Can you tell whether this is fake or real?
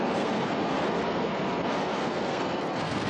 fake